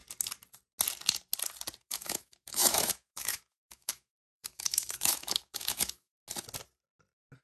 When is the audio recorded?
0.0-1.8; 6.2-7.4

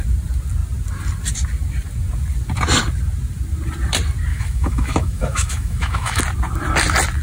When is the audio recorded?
0.0-4.3; 6.2-7.2

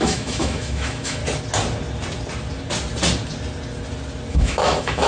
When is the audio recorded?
1.2-4.3

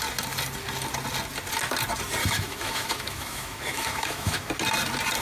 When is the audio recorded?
0.0-2.2; 4.5-5.2

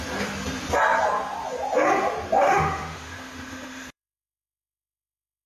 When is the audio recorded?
0.0-2.4

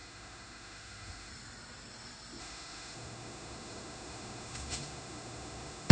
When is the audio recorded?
1.3-2.4